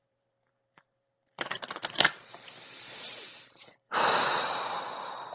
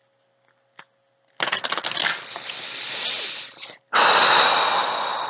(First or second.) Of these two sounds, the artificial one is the first